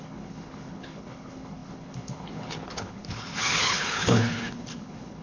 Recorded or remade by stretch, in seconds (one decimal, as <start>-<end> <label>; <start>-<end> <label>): 0.0-5.2 remade